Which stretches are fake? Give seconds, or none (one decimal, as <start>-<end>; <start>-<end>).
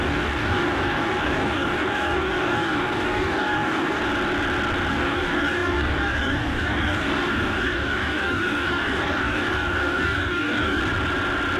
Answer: 0.0-4.0; 4.9-10.8